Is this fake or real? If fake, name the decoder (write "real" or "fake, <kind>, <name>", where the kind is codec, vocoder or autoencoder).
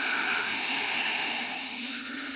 fake, autoencoder, DAC-VAE